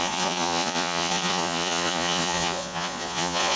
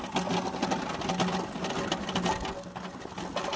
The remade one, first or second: first